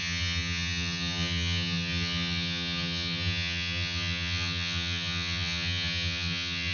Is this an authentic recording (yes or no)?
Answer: no